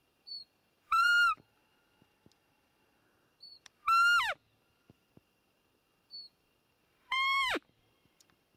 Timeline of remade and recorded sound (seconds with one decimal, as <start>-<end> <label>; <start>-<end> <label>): 0.0-1.6 remade; 1.6-4.9 recorded; 4.9-8.6 remade